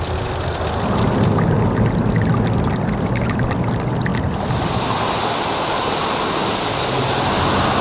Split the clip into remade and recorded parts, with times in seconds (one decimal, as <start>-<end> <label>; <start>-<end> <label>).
0.0-7.8 recorded